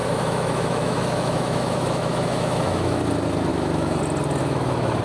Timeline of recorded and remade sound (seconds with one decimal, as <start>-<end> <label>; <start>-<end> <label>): 0.0-3.0 remade; 3.0-3.5 recorded; 3.5-4.0 remade; 4.0-4.4 recorded; 4.4-5.0 remade